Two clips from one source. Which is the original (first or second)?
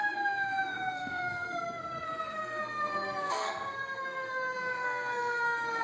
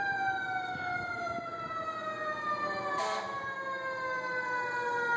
second